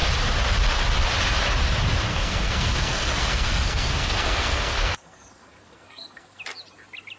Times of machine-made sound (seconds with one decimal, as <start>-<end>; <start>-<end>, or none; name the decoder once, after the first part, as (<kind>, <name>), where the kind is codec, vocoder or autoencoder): 2.1-6.4 (codec, SNAC)